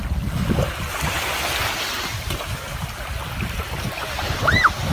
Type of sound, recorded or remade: recorded